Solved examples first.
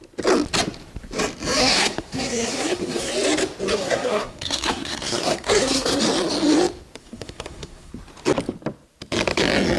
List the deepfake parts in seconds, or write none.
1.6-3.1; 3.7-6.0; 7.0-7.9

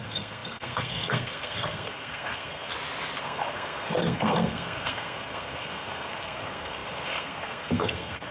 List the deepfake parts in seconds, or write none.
0.0-2.7; 3.2-8.3